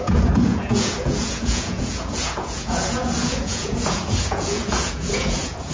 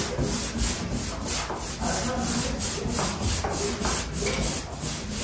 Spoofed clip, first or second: first